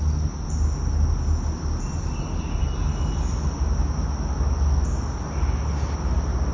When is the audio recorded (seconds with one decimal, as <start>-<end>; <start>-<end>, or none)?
0.0-6.5

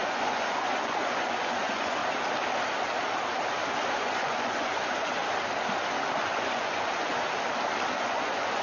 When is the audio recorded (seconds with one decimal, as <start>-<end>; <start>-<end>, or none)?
2.0-3.9; 5.2-6.2; 7.1-7.9

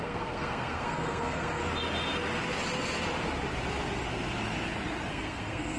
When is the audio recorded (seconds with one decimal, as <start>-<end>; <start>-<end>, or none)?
1.6-5.1

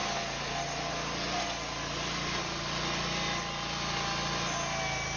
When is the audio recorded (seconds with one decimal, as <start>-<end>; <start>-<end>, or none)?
0.0-5.2

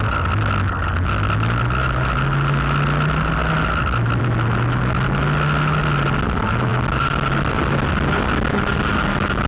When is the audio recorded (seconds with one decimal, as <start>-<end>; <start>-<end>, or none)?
0.0-9.5

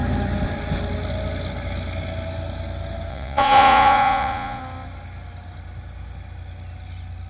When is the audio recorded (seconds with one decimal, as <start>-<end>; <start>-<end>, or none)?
0.0-3.1; 4.6-7.3